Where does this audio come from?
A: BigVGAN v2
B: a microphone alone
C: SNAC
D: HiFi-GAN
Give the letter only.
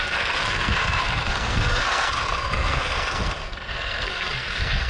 C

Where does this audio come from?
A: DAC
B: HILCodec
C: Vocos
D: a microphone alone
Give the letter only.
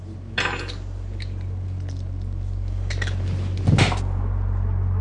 D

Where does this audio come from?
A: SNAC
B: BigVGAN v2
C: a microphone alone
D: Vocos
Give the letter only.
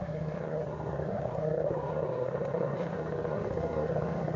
A